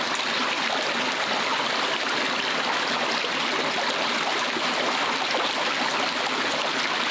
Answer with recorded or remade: recorded